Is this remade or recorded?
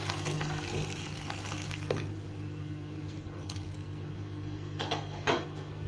remade